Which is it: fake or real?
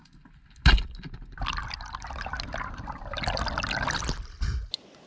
real